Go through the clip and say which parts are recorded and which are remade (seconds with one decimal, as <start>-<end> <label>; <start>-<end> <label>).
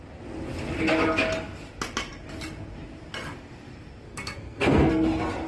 0.0-4.1 recorded; 4.1-4.9 remade; 4.9-5.5 recorded